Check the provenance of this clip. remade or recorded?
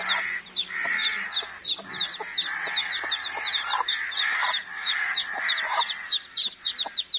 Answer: remade